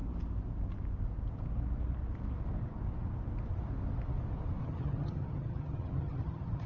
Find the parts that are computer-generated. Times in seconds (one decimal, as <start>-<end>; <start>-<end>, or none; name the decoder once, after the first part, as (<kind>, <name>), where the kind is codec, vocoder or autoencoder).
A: 4.6-6.7 (vocoder, HiFi-GAN)